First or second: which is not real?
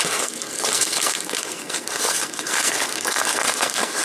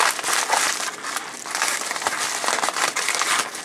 first